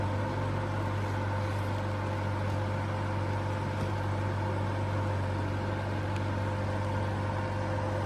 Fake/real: real